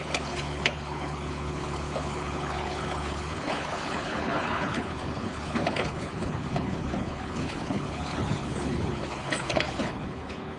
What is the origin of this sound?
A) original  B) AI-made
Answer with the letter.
B